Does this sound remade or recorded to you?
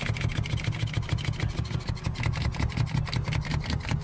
recorded